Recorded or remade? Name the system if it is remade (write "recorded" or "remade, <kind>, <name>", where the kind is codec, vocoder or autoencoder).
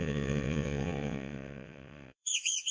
remade, vocoder, WaveNeXt